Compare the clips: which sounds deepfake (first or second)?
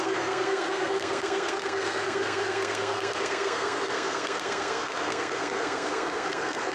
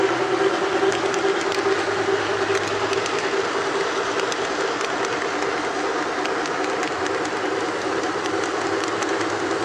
first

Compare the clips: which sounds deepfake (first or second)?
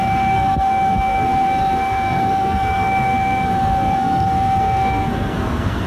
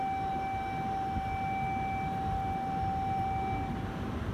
first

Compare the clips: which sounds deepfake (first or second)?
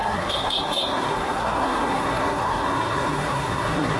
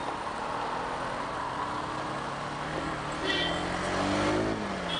first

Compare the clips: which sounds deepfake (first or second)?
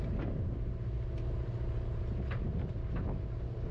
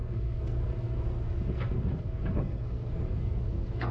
second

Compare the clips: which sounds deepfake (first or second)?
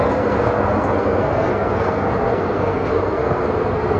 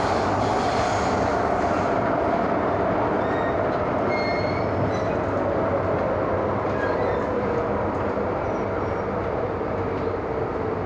first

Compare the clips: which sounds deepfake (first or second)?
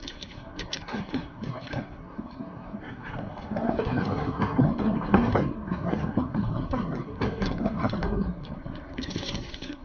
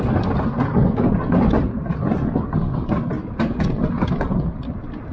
first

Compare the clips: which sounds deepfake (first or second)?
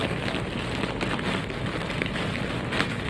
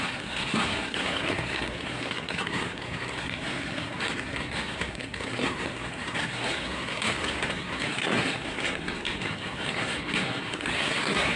second